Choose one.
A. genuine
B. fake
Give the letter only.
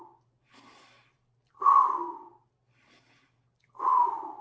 A